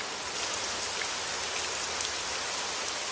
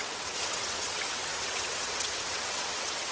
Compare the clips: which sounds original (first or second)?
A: first